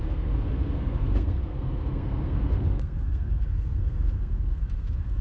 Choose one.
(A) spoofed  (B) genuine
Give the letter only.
A